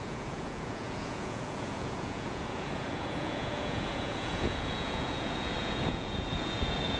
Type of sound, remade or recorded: remade